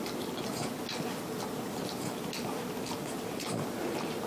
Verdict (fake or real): real